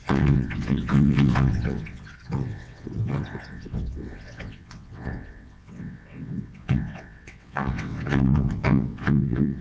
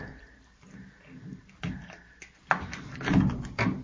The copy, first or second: first